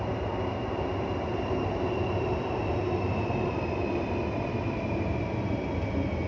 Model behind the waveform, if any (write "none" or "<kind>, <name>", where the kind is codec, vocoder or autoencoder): none